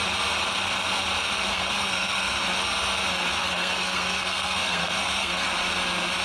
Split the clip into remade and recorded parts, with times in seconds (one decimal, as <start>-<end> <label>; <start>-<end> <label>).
0.0-1.5 recorded; 1.5-2.4 remade; 2.4-3.4 recorded; 3.4-5.5 remade; 5.5-6.2 recorded